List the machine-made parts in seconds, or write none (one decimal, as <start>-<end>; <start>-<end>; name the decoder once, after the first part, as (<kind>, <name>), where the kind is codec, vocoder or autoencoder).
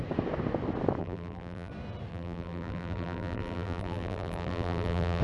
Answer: 1.0-1.7 (vocoder, BigVGAN v2); 2.1-5.2